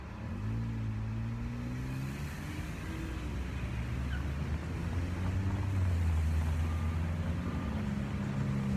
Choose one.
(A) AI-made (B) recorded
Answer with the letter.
B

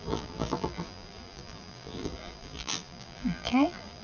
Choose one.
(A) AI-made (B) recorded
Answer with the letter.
A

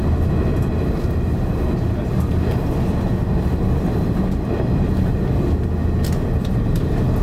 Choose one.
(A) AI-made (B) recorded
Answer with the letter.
B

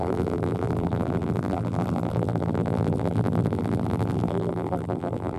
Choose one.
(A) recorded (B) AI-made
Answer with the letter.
B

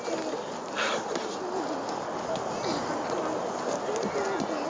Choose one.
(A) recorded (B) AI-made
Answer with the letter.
A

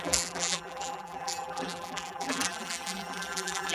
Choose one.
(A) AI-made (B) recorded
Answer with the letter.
A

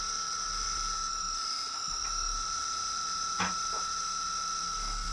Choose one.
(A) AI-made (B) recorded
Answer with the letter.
A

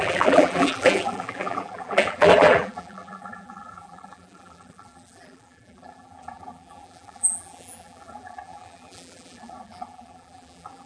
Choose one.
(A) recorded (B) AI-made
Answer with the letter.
B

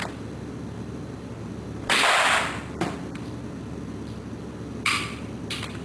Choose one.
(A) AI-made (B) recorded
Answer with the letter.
B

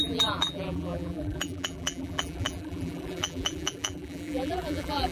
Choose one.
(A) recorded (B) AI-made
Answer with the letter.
B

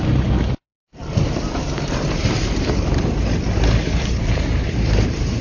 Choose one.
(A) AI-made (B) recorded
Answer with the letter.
A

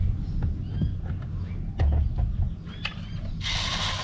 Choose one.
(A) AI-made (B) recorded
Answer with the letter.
B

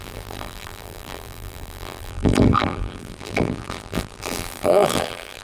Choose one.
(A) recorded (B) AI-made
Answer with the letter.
B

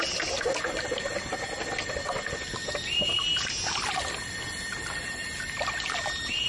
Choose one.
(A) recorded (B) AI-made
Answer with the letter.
A